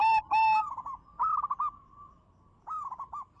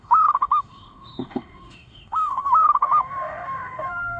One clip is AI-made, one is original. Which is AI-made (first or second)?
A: second